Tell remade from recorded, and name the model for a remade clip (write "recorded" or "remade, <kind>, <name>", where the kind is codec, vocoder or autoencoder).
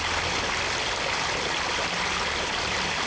recorded